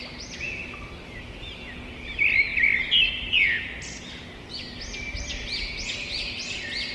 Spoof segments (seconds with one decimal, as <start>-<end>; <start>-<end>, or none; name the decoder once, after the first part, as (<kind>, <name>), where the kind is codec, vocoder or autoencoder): none